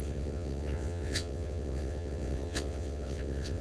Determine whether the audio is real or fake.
fake